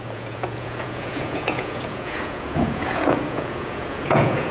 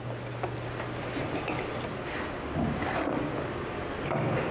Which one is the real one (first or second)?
second